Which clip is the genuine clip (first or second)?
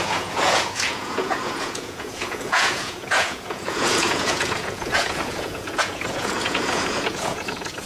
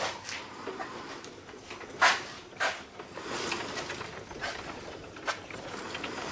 second